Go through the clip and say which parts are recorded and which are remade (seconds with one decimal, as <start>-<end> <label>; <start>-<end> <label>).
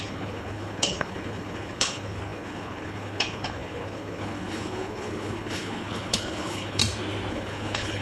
0.0-6.8 remade; 6.8-7.3 recorded; 7.3-8.0 remade